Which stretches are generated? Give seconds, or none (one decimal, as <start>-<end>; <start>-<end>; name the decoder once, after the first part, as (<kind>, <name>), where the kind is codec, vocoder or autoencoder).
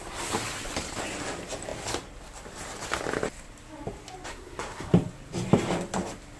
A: 4.3-4.9 (codec, SNAC)